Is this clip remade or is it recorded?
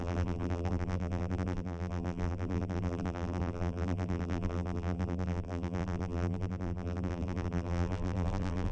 remade